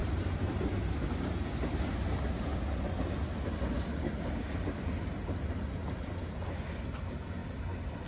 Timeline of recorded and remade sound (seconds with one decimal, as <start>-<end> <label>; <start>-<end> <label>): 0.0-8.1 recorded